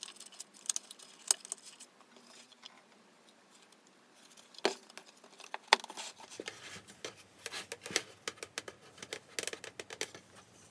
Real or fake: real